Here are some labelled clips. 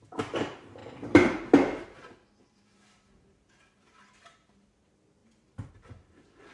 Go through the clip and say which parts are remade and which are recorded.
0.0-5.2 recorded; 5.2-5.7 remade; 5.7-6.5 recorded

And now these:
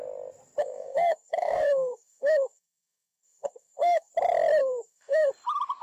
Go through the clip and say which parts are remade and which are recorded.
0.0-0.6 recorded; 0.6-4.1 remade; 4.1-4.6 recorded; 4.6-5.3 remade; 5.3-5.8 recorded